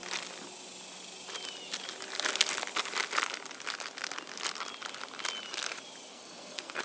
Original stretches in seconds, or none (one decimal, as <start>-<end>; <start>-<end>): 0.0-6.1